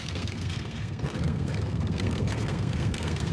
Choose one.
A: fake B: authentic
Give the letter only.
A